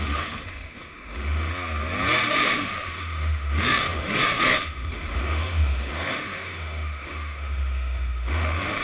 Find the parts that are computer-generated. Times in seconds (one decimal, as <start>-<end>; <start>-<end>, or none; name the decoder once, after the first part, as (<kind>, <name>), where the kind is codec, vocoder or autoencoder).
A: 0.0-1.5 (autoencoder, DAC-VAE); 2.3-8.8